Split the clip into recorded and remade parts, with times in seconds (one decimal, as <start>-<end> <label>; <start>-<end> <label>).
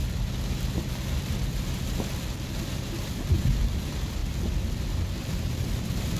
0.0-4.2 remade; 4.2-5.2 recorded; 5.2-6.2 remade